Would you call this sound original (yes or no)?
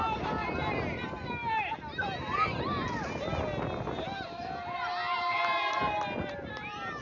yes